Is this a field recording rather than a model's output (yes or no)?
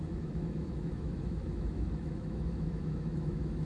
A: no